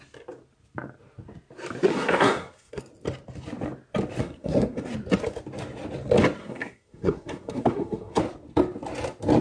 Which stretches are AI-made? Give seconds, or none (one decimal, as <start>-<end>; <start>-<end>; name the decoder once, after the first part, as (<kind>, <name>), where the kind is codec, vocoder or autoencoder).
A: 1.9-2.8 (codec, SNAC); 4.2-4.8; 6.4-8.2